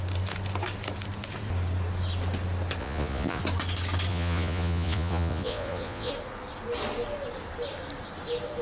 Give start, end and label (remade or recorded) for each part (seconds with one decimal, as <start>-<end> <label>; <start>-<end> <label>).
0.0-2.8 recorded; 2.8-3.4 remade; 3.4-4.1 recorded; 4.1-6.1 remade; 6.1-8.6 recorded